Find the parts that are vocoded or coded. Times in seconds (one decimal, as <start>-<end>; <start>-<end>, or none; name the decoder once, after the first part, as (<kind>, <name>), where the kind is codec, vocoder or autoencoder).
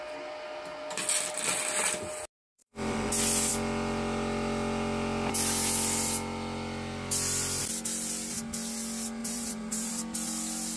2.6-3.1 (vocoder, BigVGAN v2); 9.2-9.9